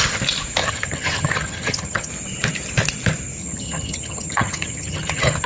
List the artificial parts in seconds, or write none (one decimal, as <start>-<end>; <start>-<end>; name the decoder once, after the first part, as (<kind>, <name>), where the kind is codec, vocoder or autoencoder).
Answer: 0.6-2.1 (vocoder, HiFi-GAN); 3.4-5.5